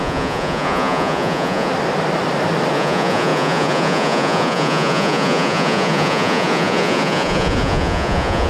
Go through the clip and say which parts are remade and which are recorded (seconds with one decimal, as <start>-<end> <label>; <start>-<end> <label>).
0.0-1.7 remade; 1.7-2.7 recorded; 2.7-8.5 remade